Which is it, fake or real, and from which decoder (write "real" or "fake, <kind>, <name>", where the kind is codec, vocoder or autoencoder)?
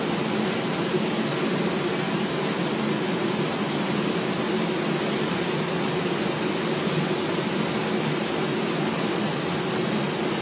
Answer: real